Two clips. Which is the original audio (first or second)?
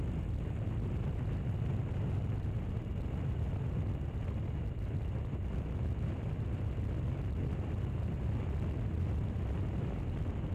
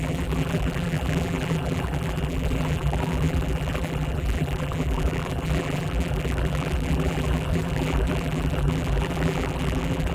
first